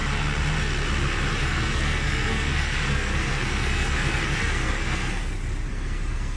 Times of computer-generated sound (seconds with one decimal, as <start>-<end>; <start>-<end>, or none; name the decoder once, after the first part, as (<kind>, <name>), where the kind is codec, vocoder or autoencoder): 1.4-5.2 (codec, SNAC); 5.7-6.4